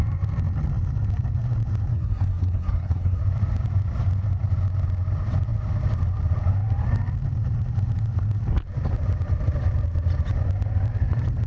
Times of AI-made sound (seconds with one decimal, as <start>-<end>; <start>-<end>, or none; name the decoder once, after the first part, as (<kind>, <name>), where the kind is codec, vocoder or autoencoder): 1.9-3.2 (codec, SNAC)